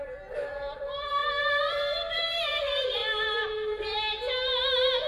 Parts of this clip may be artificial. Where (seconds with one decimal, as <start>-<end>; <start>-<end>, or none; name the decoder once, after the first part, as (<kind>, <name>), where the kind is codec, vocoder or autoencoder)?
0.0-3.0 (vocoder, BigVGAN v2)